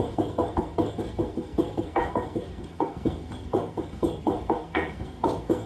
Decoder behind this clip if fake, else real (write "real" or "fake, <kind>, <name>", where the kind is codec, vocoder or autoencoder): fake, codec, SNAC